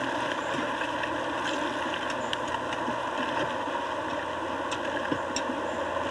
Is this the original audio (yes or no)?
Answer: yes